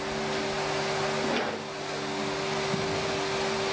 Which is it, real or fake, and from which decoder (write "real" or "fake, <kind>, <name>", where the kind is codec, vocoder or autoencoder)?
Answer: real